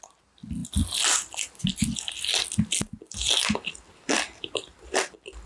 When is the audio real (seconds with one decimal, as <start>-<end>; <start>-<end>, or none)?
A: 0.0-5.5

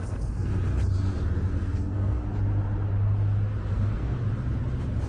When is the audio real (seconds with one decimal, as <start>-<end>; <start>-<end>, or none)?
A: 0.5-1.5; 2.2-3.7; 4.2-5.1

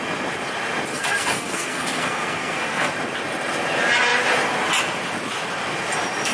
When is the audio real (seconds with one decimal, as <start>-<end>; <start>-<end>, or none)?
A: 0.0-0.9; 2.9-6.3

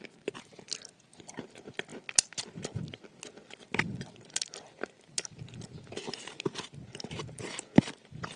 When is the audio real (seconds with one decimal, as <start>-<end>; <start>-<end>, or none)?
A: 0.0-8.4

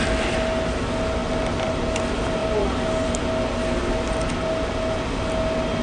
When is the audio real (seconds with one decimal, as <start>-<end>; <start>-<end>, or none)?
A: 0.0-5.8